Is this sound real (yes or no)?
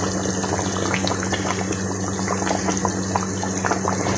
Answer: yes